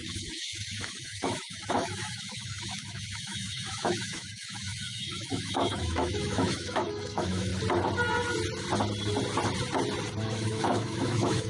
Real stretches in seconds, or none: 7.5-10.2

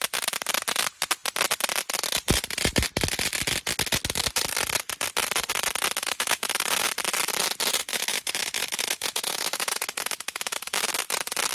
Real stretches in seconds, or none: 0.0-6.0; 6.9-7.8; 10.9-11.5

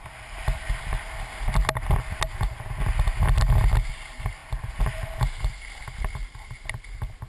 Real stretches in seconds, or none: 0.0-7.3

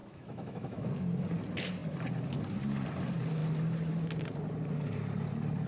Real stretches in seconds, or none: 0.9-5.7

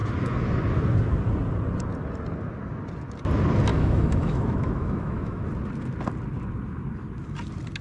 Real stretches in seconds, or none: 0.0-3.7; 5.4-7.8

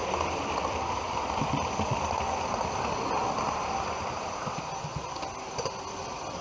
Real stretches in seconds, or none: 0.0-6.4

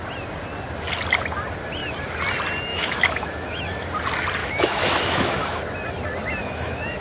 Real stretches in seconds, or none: 0.0-2.7; 3.9-4.4; 5.6-6.4

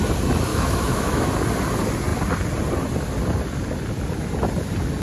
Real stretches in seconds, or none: 0.0-0.5; 1.3-5.0